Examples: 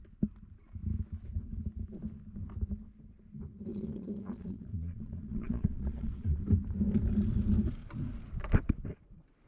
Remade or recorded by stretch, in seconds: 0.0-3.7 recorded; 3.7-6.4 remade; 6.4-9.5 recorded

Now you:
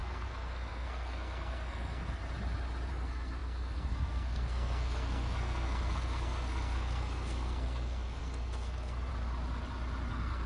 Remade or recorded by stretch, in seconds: 0.0-2.2 remade; 2.2-2.9 recorded; 2.9-9.1 remade; 9.1-10.1 recorded; 10.1-10.5 remade

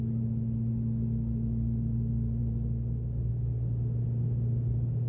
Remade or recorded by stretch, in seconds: 0.0-5.1 recorded

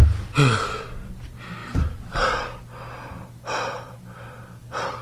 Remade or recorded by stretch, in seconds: 0.0-5.0 recorded